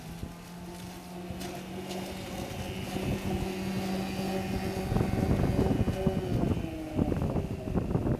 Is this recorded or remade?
recorded